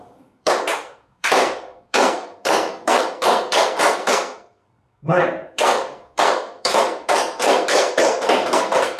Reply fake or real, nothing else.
fake